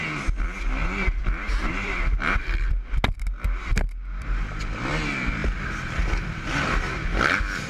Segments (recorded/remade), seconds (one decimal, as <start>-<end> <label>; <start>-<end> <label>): 0.0-0.8 recorded; 0.8-2.7 remade; 2.7-5.4 recorded; 5.4-7.2 remade; 7.2-7.7 recorded